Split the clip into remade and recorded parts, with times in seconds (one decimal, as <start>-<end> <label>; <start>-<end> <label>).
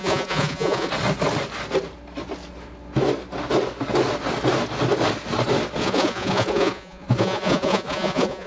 0.0-0.9 remade; 0.9-5.8 recorded; 5.8-8.5 remade